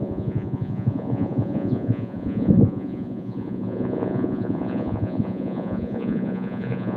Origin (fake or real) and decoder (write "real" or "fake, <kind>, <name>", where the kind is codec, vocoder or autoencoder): fake, vocoder, Vocos